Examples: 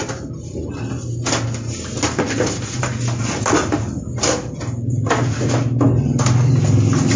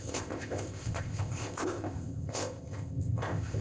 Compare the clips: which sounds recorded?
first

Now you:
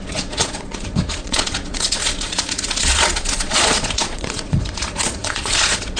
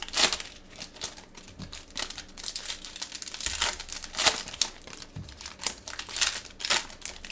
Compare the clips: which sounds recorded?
second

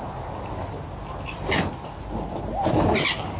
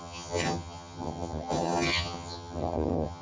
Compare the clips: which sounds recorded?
first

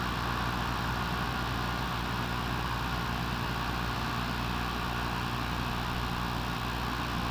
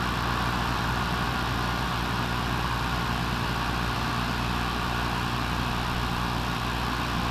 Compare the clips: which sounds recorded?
first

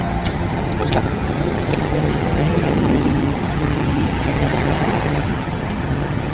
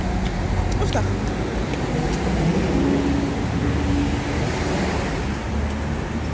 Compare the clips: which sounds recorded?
second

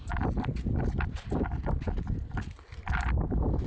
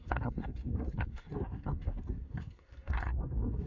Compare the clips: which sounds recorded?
first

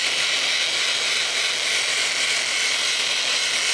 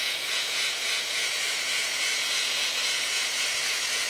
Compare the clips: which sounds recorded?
first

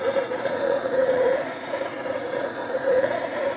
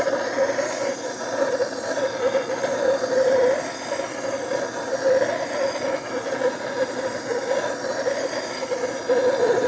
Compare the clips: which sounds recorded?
second